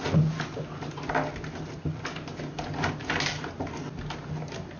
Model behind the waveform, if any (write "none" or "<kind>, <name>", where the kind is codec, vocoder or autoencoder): none